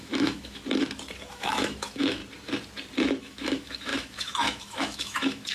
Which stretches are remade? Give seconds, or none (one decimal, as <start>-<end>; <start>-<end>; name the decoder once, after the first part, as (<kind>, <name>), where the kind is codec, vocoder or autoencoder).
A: 0.0-0.6 (autoencoder, DAC-VAE); 1.3-2.2; 3.2-5.5